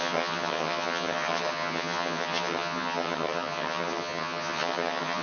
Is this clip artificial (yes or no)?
yes